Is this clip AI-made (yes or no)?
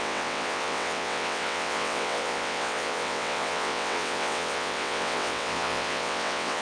yes